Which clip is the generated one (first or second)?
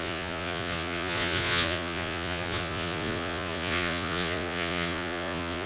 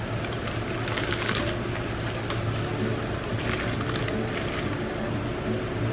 first